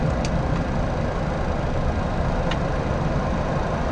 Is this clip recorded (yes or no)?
no